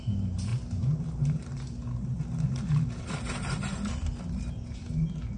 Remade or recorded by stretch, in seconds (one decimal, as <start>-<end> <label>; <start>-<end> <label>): 0.0-5.4 recorded